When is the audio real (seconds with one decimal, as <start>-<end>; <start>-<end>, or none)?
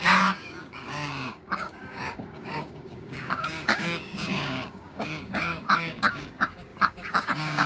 none